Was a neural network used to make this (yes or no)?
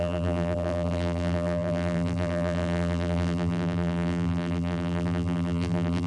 yes